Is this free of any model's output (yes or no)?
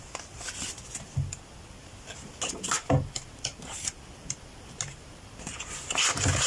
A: yes